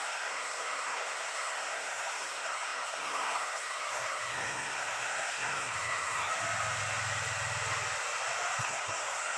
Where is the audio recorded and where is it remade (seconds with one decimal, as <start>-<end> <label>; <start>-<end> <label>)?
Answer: 0.0-6.3 remade; 6.3-8.6 recorded; 8.6-9.4 remade